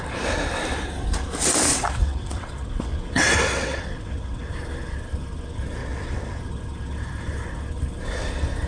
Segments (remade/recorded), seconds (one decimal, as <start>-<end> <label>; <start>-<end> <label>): 0.0-1.7 recorded; 1.7-4.5 remade; 4.5-5.8 recorded; 5.8-6.4 remade; 6.4-8.7 recorded